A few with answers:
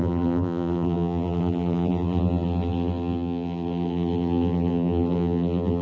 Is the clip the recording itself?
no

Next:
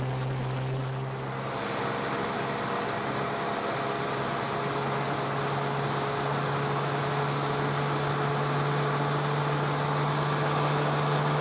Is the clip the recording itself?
yes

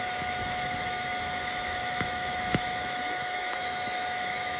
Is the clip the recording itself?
no